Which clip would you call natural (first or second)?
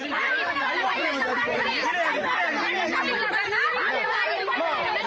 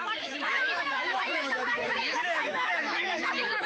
first